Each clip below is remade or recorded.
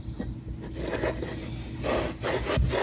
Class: recorded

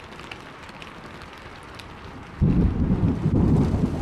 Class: remade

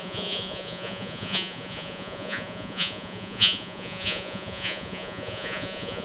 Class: remade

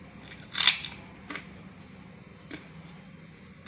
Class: recorded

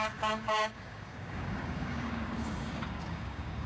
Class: remade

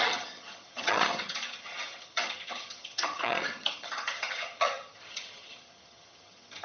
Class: remade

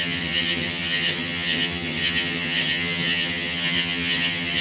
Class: remade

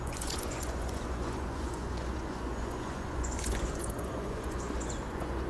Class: remade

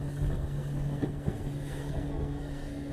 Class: remade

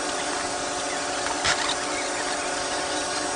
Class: recorded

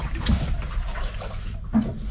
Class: recorded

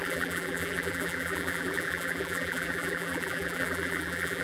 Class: remade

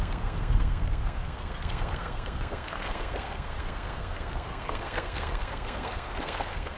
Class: remade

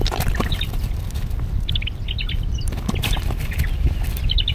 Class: recorded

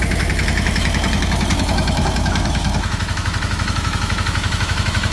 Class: remade